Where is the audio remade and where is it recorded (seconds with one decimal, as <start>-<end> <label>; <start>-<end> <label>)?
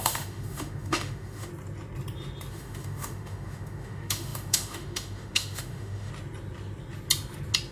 0.0-1.5 remade; 1.5-2.5 recorded; 2.5-6.1 remade; 6.1-7.7 recorded